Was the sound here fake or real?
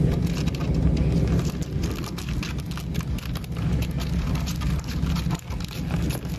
real